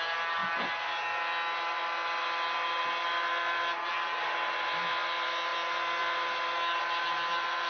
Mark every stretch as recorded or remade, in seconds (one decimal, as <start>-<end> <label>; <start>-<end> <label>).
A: 0.0-7.7 recorded